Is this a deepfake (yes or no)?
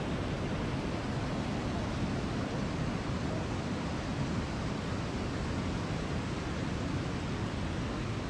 no